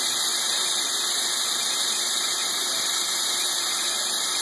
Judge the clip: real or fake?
real